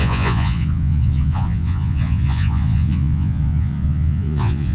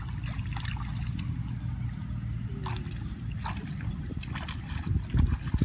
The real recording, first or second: second